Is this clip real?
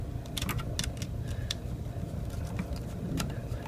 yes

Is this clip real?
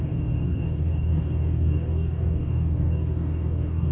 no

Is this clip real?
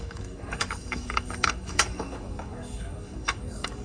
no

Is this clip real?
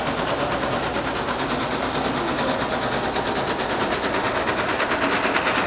yes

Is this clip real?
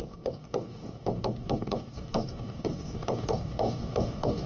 no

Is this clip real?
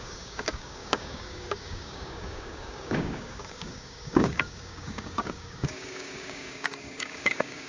no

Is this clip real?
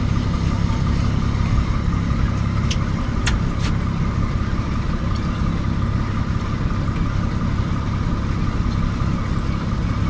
yes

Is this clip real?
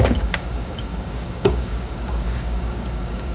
no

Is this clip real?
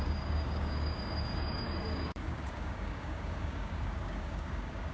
no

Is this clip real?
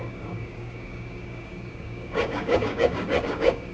no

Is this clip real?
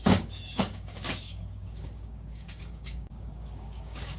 no